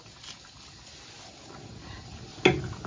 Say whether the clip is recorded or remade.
recorded